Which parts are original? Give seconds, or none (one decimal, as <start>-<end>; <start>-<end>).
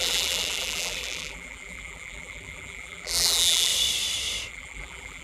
3.7-4.5